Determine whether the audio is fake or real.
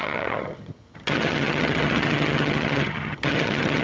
fake